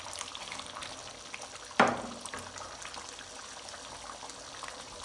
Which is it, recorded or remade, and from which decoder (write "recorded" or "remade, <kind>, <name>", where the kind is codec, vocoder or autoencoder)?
recorded